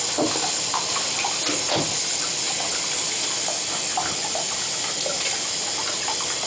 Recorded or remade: recorded